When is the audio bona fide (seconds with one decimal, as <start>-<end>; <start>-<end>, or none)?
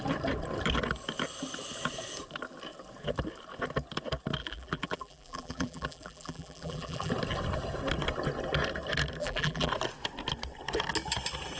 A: 0.0-4.4; 7.1-9.2; 9.7-11.6